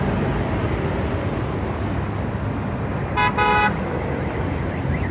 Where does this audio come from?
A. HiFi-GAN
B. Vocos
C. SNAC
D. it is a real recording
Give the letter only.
D